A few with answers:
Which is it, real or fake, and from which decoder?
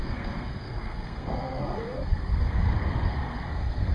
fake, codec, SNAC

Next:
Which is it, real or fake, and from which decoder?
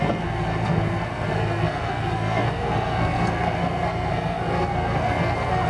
fake, codec, SNAC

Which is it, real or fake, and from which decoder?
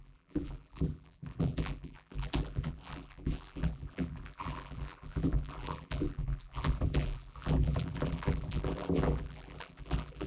fake, vocoder, BigVGAN v2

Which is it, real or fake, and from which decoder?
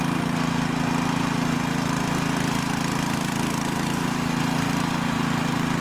real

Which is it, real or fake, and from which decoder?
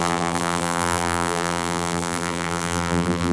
fake, vocoder, BigVGAN v2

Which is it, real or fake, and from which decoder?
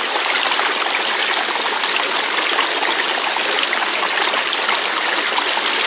real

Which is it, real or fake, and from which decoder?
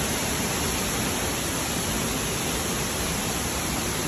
real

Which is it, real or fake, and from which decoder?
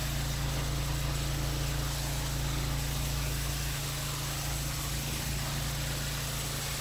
real